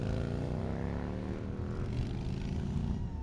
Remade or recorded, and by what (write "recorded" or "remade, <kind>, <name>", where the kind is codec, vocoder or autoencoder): recorded